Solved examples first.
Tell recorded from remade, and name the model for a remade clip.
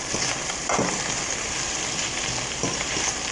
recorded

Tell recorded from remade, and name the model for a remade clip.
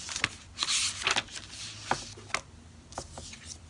recorded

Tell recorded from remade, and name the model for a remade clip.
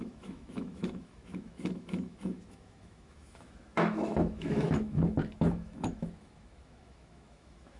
remade, autoencoder, DAC-VAE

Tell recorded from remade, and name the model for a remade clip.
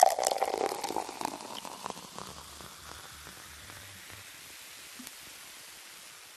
recorded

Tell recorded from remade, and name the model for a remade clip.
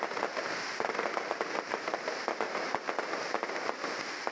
recorded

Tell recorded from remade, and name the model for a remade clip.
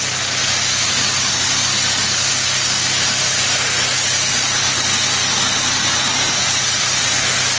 recorded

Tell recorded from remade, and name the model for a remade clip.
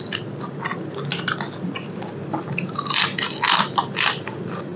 recorded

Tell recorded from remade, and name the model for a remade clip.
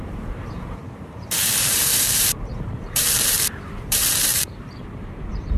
remade, vocoder, BigVGAN v2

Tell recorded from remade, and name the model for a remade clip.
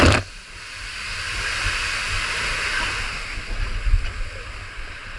recorded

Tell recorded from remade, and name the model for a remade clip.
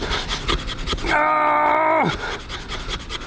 recorded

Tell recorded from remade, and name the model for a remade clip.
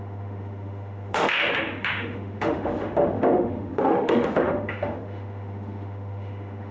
remade, autoencoder, DAC-VAE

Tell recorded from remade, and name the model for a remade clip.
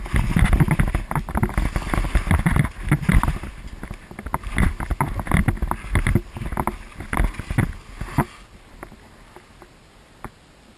recorded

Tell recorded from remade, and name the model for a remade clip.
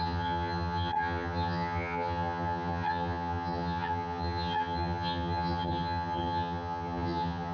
remade, vocoder, HiFi-GAN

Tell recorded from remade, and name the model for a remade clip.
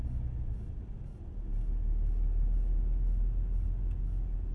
recorded